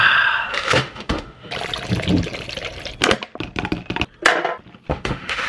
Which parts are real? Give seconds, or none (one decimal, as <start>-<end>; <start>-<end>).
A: 0.0-0.5; 1.5-4.9